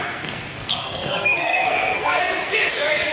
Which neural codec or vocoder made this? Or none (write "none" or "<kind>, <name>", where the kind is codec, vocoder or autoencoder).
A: codec, SNAC